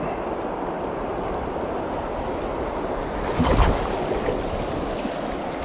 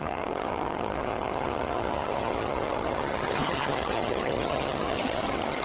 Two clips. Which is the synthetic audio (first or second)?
second